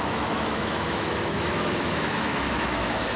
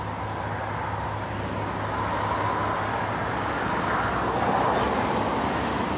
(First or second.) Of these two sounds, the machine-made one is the first